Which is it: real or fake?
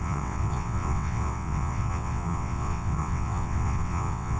fake